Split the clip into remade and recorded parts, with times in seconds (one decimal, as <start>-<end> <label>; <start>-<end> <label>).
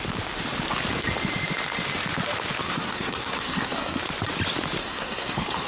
0.0-2.6 recorded; 2.6-4.0 remade; 4.0-4.8 recorded; 4.8-5.7 remade